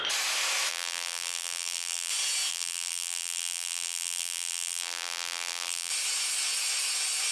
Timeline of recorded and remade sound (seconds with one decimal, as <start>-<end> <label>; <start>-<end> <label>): 0.0-0.7 recorded; 0.7-2.1 remade; 2.1-2.5 recorded; 2.5-5.9 remade; 5.9-7.3 recorded